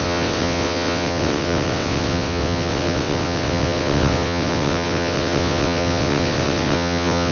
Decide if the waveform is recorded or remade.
remade